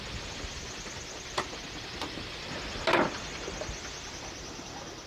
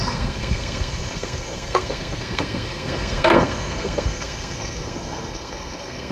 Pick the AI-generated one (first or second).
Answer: second